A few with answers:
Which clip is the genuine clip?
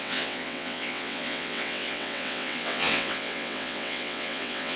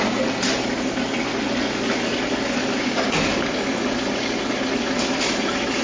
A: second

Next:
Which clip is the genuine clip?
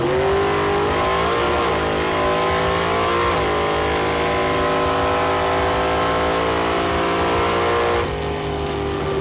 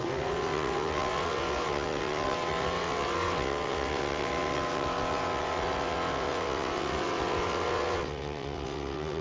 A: first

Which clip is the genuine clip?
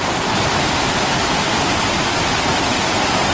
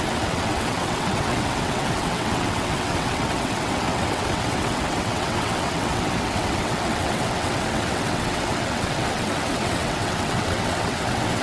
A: first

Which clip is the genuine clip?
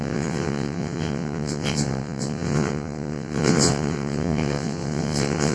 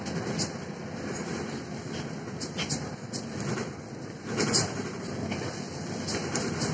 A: second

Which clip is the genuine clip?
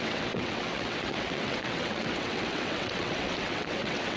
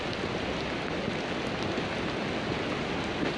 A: second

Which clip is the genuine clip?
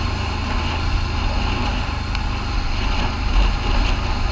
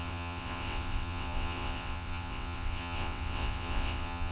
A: first